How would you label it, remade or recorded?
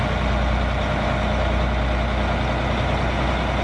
recorded